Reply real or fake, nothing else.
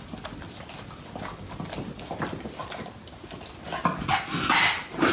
real